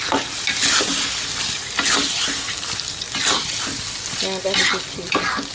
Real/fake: real